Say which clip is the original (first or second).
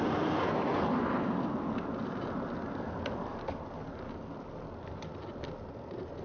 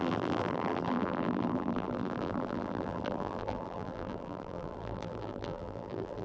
first